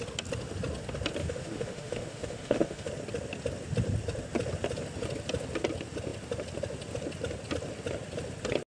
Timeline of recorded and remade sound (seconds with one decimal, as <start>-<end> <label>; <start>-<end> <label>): 0.0-1.2 recorded; 1.2-2.9 remade; 2.9-8.7 recorded